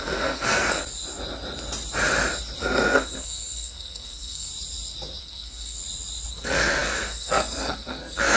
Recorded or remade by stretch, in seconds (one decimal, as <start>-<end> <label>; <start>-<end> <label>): 0.0-0.8 remade; 0.8-2.6 recorded; 2.6-4.5 remade; 4.5-5.2 recorded; 5.2-5.8 remade; 5.8-6.3 recorded; 6.3-8.4 remade